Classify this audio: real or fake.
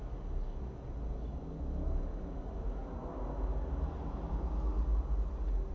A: real